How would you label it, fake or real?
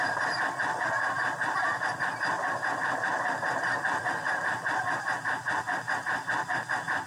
real